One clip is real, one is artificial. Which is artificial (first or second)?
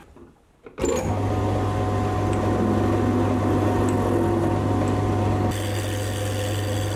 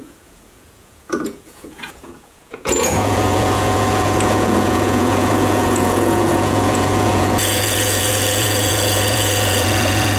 second